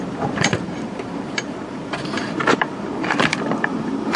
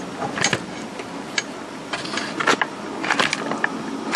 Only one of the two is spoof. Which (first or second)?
first